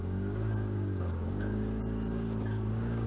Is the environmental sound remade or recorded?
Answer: remade